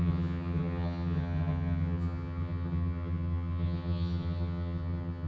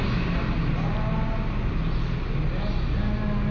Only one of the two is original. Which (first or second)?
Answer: second